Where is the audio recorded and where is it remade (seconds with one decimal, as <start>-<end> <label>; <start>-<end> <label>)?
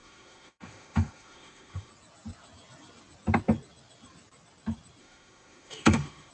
0.0-1.9 remade; 1.9-5.0 recorded; 5.0-6.3 remade